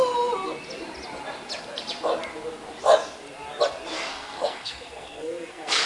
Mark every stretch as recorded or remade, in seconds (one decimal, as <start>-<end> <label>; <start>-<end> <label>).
0.0-4.1 recorded; 4.1-5.9 remade